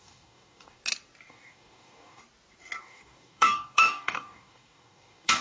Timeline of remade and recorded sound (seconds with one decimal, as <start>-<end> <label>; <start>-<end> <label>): 0.0-0.8 remade; 0.8-1.3 recorded; 1.3-2.2 remade; 2.2-2.8 recorded; 2.8-5.4 remade

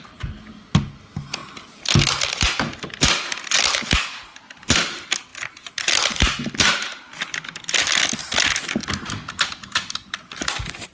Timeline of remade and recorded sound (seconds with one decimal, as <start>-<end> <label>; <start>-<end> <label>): 0.0-10.9 recorded

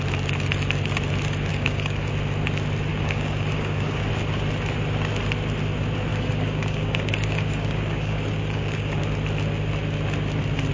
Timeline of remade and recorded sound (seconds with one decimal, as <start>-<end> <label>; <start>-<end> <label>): 0.0-1.5 recorded; 1.5-2.1 remade; 2.1-2.9 recorded; 2.9-4.1 remade; 4.1-6.1 recorded; 6.1-9.0 remade; 9.0-10.7 recorded

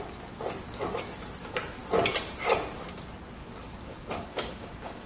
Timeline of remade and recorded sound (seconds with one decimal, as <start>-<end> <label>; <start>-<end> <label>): 0.0-4.3 recorded; 4.3-5.1 remade

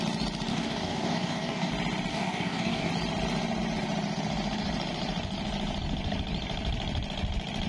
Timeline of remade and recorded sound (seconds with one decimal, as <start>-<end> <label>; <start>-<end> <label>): 0.0-0.5 recorded; 0.5-1.7 remade; 1.7-2.1 recorded; 2.1-2.9 remade; 2.9-7.7 recorded

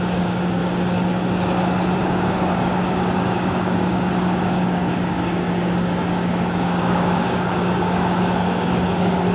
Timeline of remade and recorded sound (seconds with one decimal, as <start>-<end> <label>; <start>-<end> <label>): 0.0-0.6 remade; 0.6-2.0 recorded; 2.0-9.3 remade